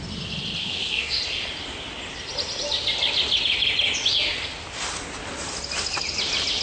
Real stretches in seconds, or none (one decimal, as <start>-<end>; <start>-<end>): 0.0-0.6; 1.2-6.6